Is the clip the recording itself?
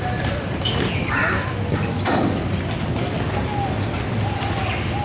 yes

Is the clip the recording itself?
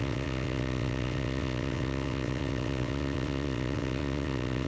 no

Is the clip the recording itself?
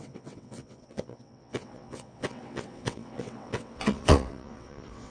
no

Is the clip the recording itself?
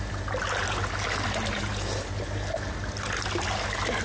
yes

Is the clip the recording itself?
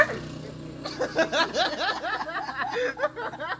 yes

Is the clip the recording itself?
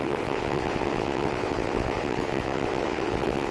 no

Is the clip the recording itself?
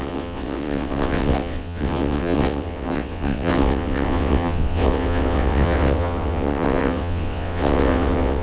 no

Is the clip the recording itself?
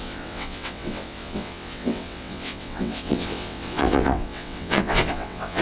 no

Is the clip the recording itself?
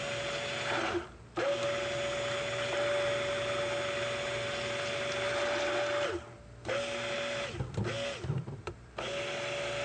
yes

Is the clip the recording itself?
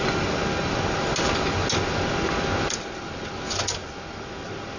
yes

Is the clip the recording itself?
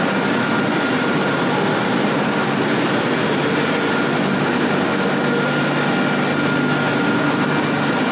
yes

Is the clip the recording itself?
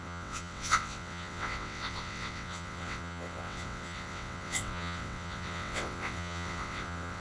no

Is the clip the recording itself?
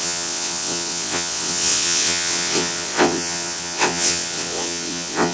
no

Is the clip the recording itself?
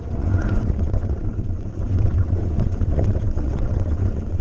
no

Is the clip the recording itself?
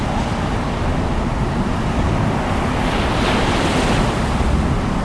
yes